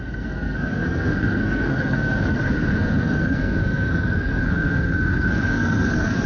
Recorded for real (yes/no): no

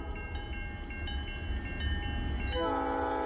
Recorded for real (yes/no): yes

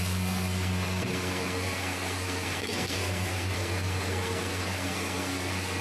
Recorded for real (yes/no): no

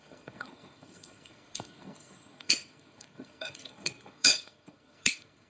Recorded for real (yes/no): no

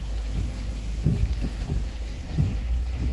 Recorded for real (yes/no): no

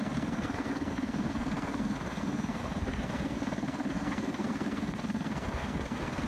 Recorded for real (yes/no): no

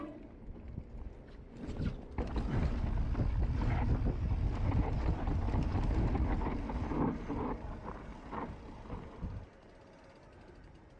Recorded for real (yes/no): yes